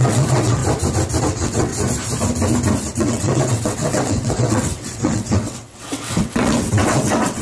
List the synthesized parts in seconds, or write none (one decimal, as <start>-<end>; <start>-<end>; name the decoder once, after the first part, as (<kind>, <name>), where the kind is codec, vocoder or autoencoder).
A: 0.0-0.6 (vocoder, WaveNeXt); 1.2-1.7; 3.0-7.4